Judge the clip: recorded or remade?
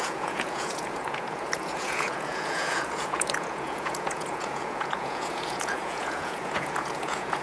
remade